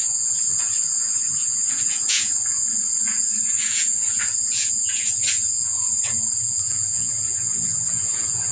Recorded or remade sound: remade